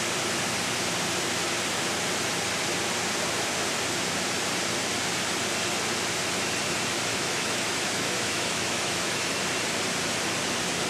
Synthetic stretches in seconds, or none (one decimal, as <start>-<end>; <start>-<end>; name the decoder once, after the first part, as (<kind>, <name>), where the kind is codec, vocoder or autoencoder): 7.1-9.4 (autoencoder, DAC-VAE)